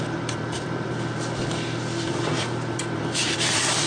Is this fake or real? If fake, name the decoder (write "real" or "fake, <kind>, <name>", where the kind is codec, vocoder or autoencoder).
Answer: fake, vocoder, BigVGAN v2